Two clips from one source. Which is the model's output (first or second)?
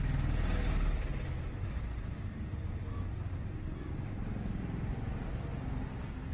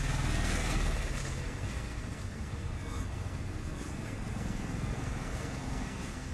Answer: second